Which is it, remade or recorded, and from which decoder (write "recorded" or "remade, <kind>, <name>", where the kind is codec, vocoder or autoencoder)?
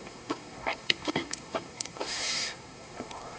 remade, codec, SNAC